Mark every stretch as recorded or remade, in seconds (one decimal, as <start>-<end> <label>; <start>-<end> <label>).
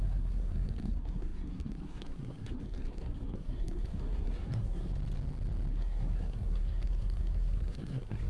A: 0.0-4.9 remade; 4.9-5.7 recorded; 5.7-8.3 remade